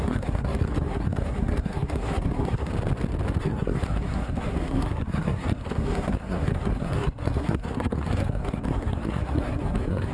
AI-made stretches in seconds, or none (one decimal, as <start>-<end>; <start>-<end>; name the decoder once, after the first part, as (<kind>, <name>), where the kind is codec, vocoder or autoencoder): 0.0-2.7 (codec, SNAC); 3.4-10.1